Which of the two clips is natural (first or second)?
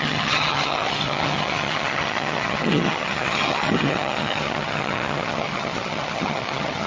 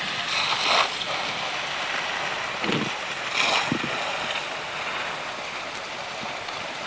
second